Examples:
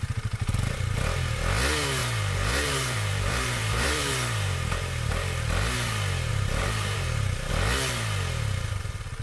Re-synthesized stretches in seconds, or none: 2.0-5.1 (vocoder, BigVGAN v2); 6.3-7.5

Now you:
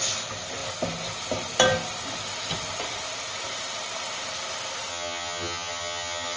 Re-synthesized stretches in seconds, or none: 4.9-6.4 (vocoder, HiFi-GAN)

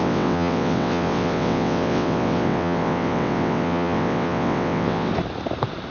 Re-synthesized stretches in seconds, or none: 0.0-5.1 (vocoder, WaveNeXt)